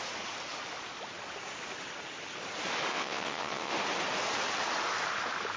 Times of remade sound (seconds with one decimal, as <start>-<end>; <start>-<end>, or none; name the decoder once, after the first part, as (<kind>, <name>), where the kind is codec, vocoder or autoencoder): 2.9-3.7 (vocoder, WaveNeXt)